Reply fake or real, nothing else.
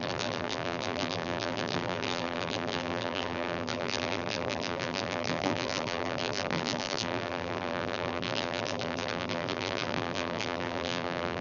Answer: fake